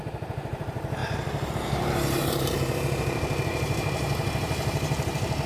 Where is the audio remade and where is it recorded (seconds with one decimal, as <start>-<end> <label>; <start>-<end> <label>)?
0.0-1.0 remade; 1.0-1.5 recorded; 1.5-5.5 remade